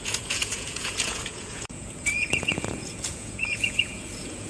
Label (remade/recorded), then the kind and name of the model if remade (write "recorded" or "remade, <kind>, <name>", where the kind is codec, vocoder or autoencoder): remade, vocoder, Vocos